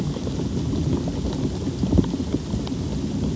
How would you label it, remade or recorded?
recorded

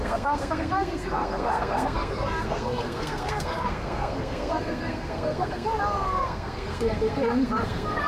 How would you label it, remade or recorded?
remade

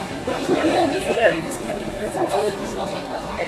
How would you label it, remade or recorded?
remade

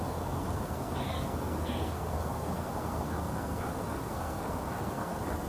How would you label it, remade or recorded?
remade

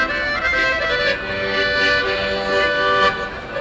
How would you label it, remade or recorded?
recorded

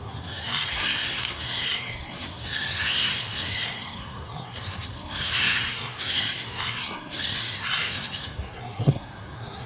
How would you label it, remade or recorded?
remade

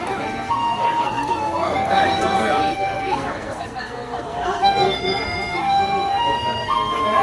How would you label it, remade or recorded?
remade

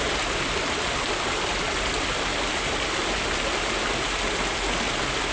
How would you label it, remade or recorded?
recorded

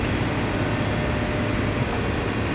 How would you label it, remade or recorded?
recorded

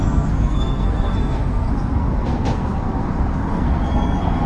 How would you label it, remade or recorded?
remade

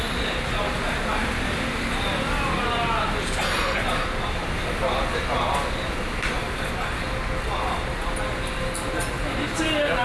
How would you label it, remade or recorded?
recorded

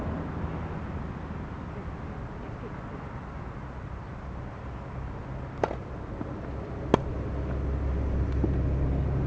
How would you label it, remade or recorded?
recorded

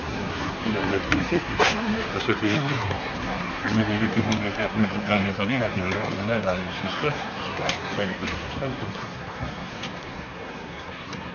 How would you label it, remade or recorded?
remade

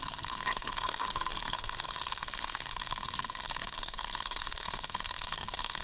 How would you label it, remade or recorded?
remade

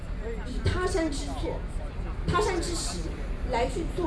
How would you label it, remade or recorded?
recorded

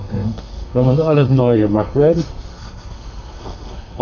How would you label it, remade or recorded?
remade